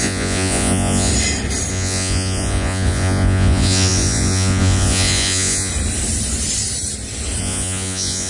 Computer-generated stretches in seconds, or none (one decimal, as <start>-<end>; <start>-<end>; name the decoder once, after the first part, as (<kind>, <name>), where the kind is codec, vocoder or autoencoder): 0.0-1.1 (vocoder, Vocos); 1.7-5.7; 7.4-8.3